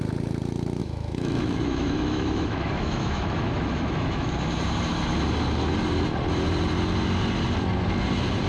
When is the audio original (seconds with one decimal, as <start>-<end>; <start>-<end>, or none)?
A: 0.0-0.8; 4.3-8.5